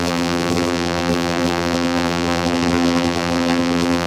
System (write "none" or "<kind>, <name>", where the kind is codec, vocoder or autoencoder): vocoder, BigVGAN v2